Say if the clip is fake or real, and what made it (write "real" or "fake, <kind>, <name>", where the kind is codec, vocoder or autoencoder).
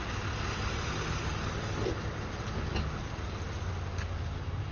real